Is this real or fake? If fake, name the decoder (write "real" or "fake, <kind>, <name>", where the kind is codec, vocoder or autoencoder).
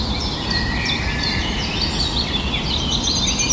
real